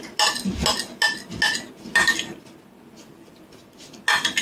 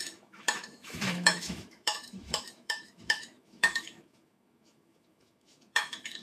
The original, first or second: first